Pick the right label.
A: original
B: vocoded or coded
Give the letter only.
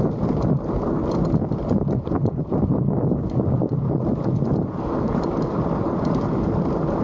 A